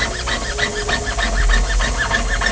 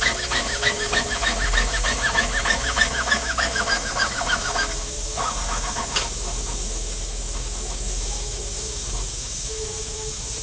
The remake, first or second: second